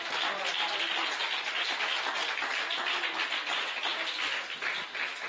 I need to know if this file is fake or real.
real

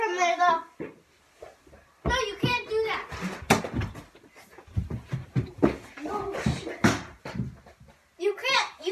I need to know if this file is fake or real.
real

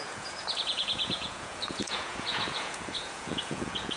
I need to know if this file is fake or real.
fake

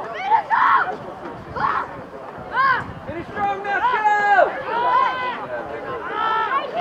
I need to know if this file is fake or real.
real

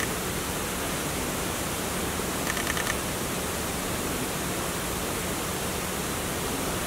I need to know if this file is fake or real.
real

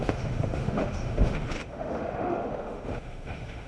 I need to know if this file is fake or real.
fake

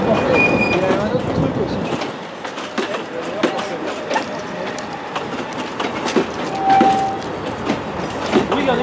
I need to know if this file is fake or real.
real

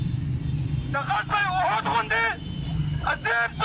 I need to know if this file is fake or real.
real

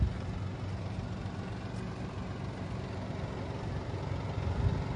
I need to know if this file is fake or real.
real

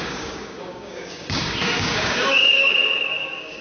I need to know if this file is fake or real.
fake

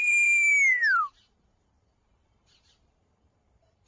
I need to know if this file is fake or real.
fake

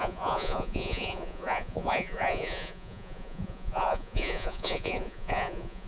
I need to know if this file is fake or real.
fake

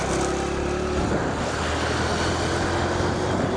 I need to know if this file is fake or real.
real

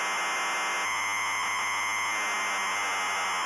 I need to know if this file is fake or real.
real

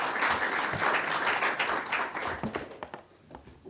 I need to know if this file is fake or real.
real